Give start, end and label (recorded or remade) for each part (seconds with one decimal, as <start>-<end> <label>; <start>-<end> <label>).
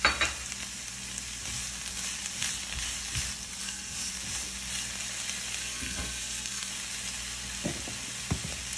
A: 0.0-3.6 recorded; 3.6-4.1 remade; 4.1-5.6 recorded; 5.6-6.7 remade; 6.7-8.8 recorded